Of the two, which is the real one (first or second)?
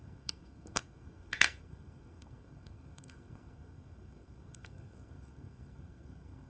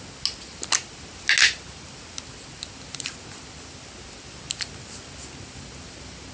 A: second